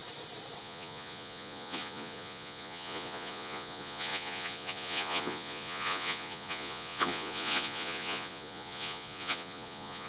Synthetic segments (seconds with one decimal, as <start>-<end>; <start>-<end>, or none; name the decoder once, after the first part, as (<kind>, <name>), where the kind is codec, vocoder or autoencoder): 0.6-10.1 (vocoder, Vocos)